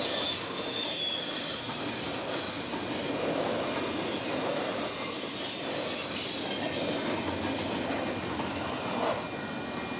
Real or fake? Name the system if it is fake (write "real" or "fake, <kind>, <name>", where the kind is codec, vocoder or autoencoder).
real